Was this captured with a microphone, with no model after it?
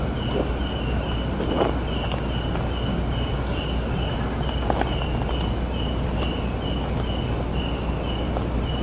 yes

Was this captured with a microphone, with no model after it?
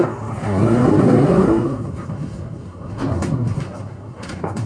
no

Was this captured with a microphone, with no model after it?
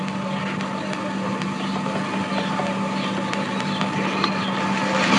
yes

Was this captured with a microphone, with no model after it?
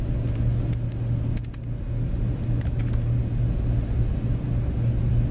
yes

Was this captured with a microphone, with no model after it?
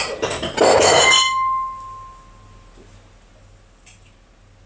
yes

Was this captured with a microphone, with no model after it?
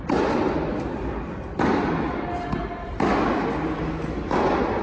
yes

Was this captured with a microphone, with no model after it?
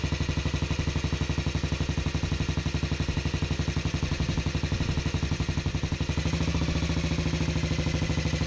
yes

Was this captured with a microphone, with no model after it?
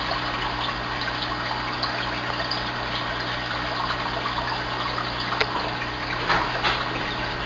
yes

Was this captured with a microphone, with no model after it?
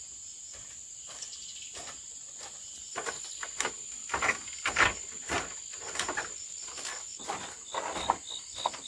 yes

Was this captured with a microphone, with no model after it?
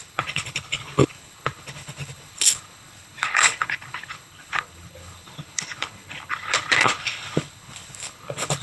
no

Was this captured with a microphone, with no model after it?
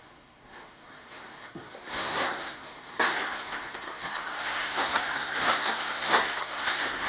no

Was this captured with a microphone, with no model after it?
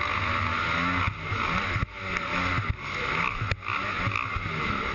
yes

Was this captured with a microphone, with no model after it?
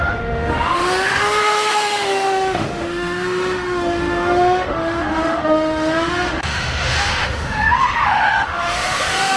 no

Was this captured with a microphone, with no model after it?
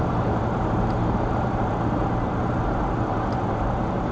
no